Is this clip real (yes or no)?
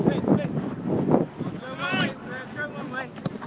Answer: yes